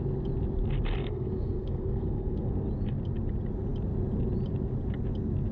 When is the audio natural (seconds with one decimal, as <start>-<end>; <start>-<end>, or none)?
0.0-1.0; 2.5-5.5